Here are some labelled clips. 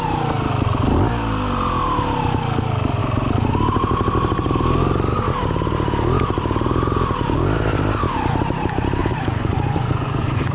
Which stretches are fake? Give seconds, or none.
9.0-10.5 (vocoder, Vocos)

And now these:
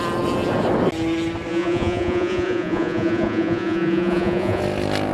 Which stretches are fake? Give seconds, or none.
1.5-4.6 (vocoder, Vocos)

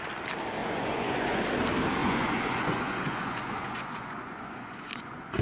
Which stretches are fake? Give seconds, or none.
0.6-1.4 (vocoder, Vocos); 2.0-5.4

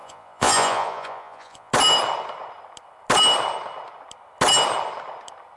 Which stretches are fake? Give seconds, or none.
0.0-1.7 (vocoder, Vocos)

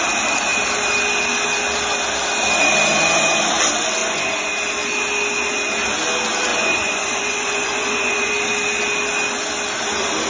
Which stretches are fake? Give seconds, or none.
4.0-4.5 (vocoder, Vocos); 6.5-8.3

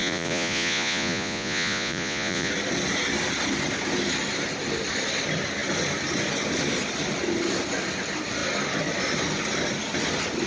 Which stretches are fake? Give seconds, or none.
0.0-2.5 (vocoder, Vocos)

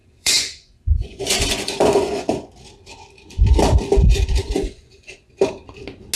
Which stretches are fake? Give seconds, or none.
0.0-2.5 (vocoder, Vocos); 4.4-5.3